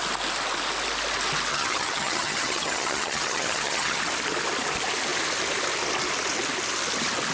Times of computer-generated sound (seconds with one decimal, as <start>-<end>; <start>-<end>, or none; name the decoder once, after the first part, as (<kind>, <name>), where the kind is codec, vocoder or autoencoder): 1.5-4.0 (vocoder, HiFi-GAN)